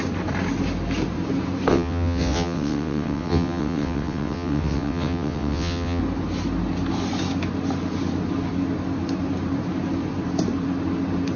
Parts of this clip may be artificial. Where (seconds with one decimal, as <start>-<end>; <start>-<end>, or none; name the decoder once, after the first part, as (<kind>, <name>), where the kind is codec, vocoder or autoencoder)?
1.7-6.0 (vocoder, WaveNeXt)